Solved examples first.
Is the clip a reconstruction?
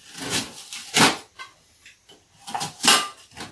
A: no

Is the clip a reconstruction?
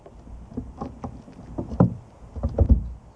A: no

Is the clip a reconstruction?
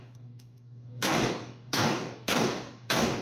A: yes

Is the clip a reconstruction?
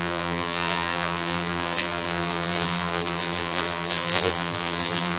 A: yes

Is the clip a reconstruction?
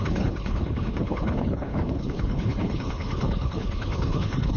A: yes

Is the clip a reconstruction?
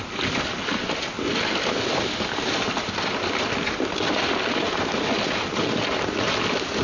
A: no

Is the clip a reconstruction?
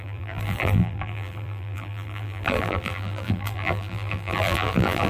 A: yes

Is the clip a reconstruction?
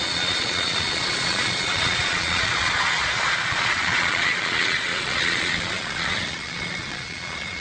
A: yes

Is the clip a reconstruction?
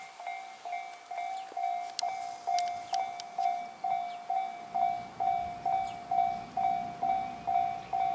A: no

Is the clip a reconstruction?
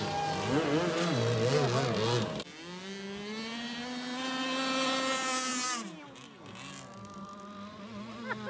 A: no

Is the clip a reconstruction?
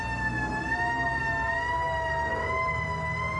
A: no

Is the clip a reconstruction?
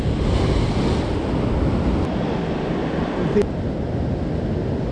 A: no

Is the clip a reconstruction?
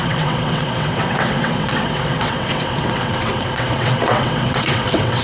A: yes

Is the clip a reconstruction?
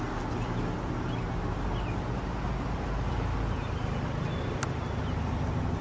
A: no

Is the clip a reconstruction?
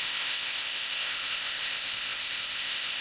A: yes